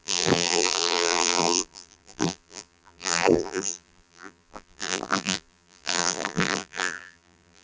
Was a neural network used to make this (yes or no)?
yes